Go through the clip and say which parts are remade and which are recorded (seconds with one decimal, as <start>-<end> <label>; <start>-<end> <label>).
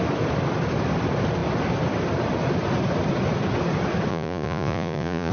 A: 0.0-4.1 recorded; 4.1-5.3 remade